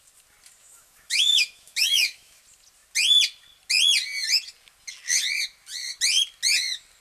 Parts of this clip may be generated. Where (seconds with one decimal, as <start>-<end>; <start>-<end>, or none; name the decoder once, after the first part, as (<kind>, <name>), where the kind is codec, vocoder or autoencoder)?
0.6-2.4 (autoencoder, DAC-VAE)